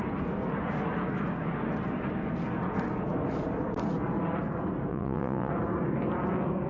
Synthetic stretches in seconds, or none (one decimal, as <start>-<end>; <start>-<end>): 4.9-5.5